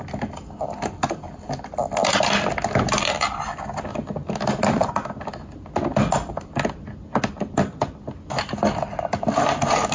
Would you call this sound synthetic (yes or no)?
no